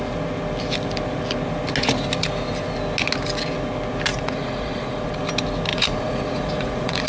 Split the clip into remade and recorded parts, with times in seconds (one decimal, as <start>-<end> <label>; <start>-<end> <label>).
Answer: 0.0-4.1 recorded; 4.1-5.2 remade; 5.2-5.7 recorded; 5.7-7.1 remade